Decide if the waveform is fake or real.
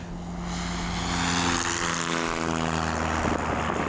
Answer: real